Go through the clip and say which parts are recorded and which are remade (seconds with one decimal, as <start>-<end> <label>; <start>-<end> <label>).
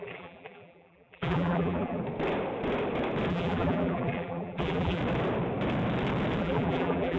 0.0-2.0 remade; 2.0-3.3 recorded; 3.3-5.0 remade; 5.0-6.4 recorded; 6.4-7.2 remade